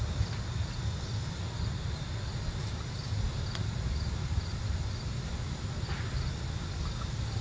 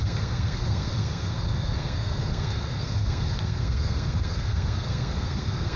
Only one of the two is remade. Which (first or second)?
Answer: second